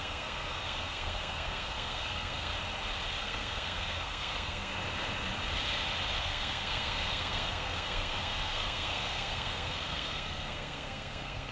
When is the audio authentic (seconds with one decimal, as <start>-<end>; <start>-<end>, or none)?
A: 2.5-3.2; 4.7-6.2